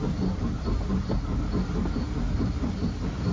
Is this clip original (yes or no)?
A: yes